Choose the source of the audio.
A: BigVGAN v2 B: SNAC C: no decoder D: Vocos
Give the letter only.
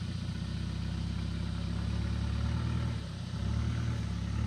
C